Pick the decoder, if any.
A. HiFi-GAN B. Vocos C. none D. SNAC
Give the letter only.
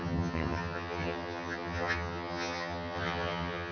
A